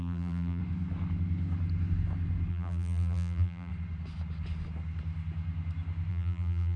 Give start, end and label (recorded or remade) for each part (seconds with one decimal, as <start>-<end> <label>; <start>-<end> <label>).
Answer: 0.0-0.6 remade; 0.6-2.5 recorded; 2.5-3.7 remade; 3.7-6.1 recorded; 6.1-6.8 remade